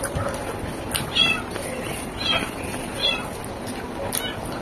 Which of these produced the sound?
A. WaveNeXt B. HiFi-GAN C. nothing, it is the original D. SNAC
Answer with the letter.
C